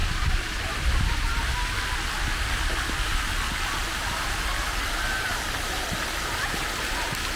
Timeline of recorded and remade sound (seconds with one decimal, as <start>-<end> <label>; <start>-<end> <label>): 0.0-7.4 recorded